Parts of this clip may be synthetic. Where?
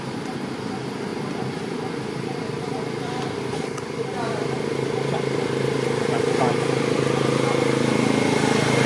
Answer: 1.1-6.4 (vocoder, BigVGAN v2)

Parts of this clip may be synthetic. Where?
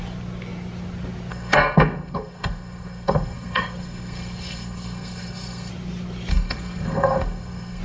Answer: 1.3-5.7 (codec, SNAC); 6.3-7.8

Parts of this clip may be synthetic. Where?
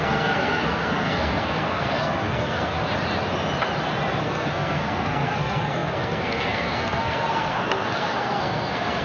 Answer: 0.0-2.8 (codec, SNAC); 4.2-9.0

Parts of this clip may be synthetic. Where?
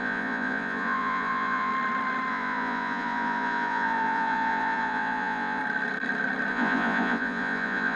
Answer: 0.0-1.7 (vocoder, Vocos); 2.3-5.6; 6.5-8.0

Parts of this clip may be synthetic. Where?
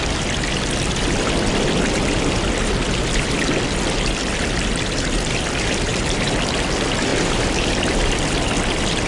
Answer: none